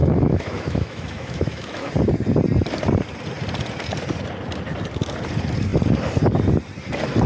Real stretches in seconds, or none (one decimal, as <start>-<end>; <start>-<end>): 1.9-7.3